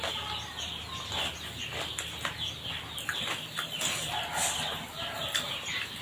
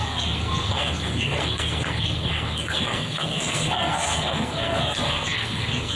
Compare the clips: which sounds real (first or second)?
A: first